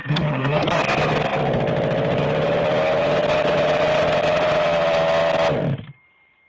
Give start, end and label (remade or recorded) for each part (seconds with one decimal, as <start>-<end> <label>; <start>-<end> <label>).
0.0-0.8 remade; 0.8-6.5 recorded